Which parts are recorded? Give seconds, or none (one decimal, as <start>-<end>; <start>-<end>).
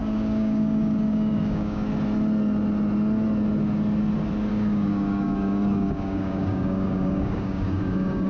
1.9-4.5